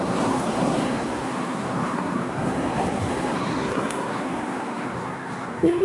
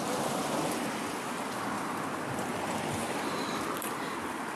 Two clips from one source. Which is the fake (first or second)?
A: first